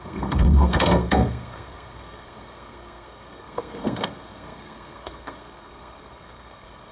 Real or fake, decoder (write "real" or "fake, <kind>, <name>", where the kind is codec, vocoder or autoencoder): fake, codec, SNAC